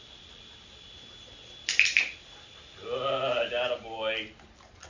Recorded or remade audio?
recorded